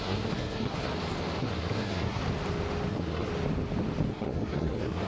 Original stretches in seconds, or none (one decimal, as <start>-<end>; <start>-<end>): 0.9-1.4; 2.2-2.9; 3.3-4.1